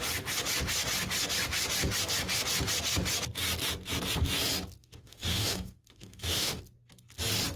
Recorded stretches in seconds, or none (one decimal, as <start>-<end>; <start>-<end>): 0.0-4.8; 6.6-7.6